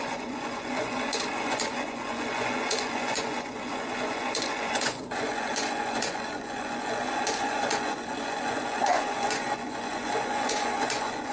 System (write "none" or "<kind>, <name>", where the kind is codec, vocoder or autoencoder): vocoder, Vocos